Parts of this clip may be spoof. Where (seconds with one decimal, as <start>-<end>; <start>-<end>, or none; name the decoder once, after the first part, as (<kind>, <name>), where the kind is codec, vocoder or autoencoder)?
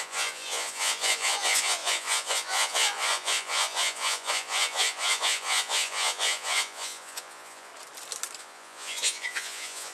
0.0-7.7 (vocoder, Vocos); 8.4-9.9